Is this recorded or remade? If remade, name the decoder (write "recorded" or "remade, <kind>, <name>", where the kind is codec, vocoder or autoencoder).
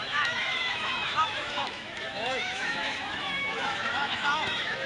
remade, autoencoder, DAC-VAE